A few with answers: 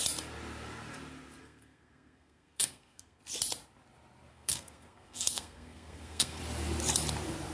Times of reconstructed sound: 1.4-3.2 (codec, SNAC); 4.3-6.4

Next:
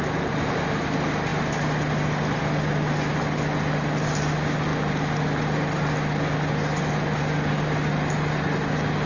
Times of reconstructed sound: none